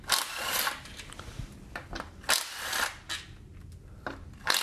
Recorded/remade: recorded